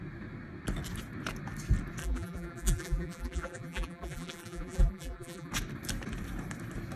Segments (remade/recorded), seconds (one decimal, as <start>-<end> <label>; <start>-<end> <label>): 0.0-2.0 recorded; 2.0-5.5 remade; 5.5-7.0 recorded